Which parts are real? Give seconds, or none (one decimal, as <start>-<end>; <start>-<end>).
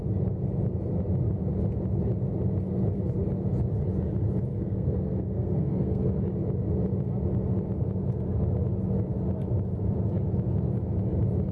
0.0-4.5; 6.2-11.5